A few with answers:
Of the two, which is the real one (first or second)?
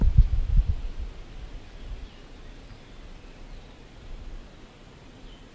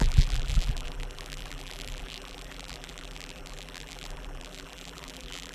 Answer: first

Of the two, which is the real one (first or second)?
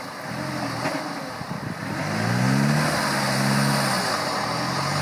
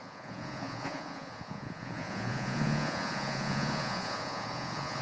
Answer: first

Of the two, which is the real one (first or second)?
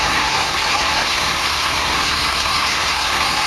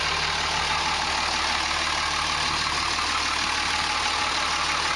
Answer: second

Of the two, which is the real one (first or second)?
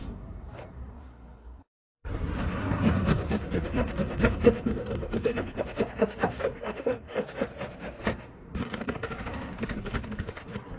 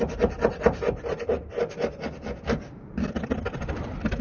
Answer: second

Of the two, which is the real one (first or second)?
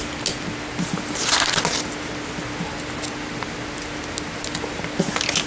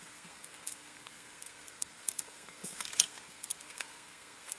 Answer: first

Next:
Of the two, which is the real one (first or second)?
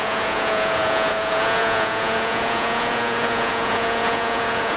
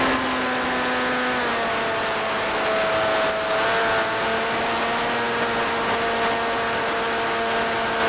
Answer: second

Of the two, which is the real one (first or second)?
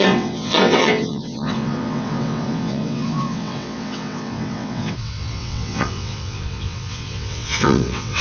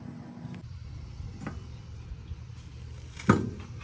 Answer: second